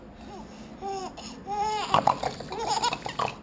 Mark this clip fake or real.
real